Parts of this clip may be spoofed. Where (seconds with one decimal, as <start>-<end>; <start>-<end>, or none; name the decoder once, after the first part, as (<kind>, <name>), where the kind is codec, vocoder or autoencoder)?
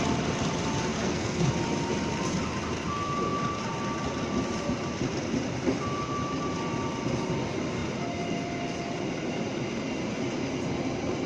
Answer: 0.9-1.5 (codec, SNAC)